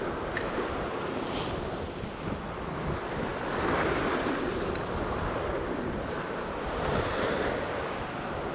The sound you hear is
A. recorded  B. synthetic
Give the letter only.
A